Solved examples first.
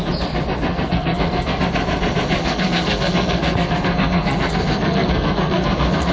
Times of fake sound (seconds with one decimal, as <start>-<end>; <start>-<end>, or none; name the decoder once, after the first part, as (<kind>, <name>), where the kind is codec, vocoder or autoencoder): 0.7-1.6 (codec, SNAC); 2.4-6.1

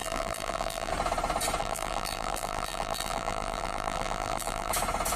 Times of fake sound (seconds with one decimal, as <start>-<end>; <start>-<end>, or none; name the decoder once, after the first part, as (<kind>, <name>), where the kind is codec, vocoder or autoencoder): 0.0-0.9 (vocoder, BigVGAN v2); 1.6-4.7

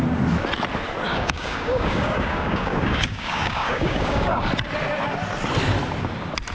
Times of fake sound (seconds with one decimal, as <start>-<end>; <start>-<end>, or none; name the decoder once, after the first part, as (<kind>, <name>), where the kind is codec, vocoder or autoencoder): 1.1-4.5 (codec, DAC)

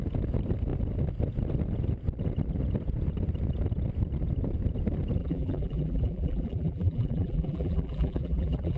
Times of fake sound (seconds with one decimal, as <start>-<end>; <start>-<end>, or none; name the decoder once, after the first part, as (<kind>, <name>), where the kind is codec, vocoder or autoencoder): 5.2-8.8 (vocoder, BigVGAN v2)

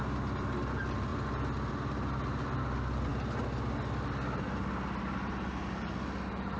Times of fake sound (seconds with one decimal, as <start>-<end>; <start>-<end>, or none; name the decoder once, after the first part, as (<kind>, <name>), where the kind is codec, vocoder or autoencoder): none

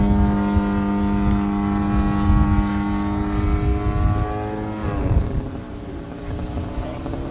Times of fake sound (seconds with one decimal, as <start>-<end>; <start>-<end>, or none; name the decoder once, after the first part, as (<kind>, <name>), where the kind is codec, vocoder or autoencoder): none

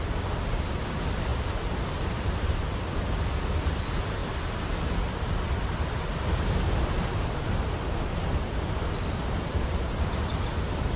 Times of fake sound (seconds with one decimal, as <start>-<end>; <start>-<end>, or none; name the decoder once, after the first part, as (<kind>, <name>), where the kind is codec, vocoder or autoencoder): none